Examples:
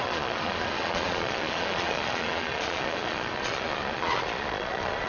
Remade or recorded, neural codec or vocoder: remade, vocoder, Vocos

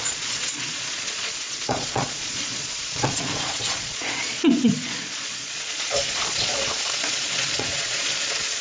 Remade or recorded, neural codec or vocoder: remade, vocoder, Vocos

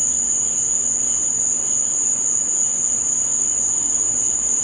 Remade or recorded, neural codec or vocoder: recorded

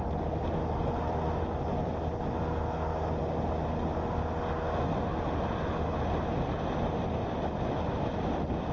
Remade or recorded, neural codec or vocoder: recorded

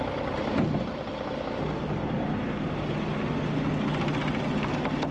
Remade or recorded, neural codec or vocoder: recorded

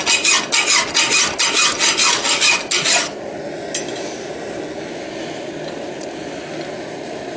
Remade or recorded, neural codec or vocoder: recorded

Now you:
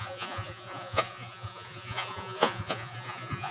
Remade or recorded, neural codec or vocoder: remade, vocoder, Vocos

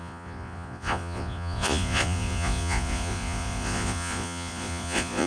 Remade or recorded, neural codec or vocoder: remade, vocoder, Vocos